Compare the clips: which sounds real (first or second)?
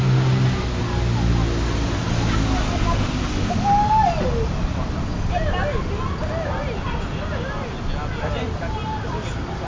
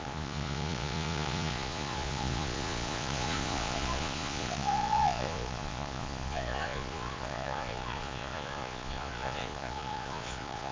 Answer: first